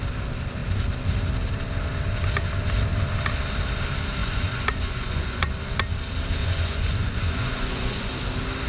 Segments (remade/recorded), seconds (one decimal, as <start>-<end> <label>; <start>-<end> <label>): 0.0-4.2 recorded; 4.2-5.5 remade; 5.5-6.4 recorded; 6.4-8.1 remade; 8.1-8.7 recorded